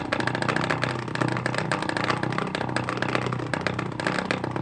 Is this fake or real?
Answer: real